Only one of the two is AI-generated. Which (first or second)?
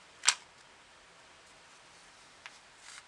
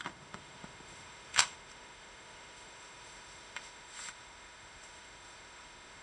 second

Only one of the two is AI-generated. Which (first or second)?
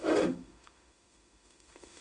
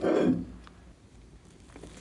first